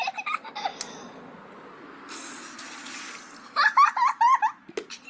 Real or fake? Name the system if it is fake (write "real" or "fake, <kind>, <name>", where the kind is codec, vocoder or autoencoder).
real